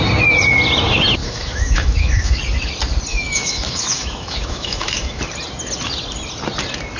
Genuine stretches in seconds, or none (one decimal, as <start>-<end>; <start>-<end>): 0.0-1.2; 2.4-3.1; 5.2-7.0